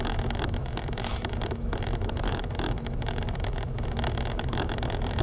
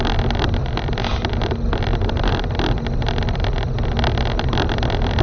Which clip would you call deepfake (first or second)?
first